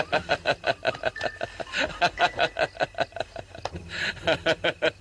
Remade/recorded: recorded